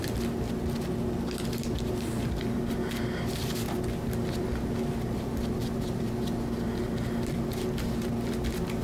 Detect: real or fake real